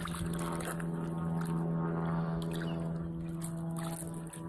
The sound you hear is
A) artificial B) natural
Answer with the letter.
B